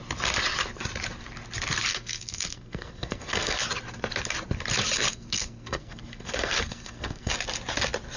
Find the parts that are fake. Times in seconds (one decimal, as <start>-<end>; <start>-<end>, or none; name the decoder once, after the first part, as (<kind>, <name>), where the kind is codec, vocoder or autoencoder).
1.9-3.6 (codec, SNAC); 5.1-7.3